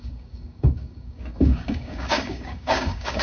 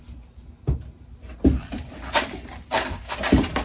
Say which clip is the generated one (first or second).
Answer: first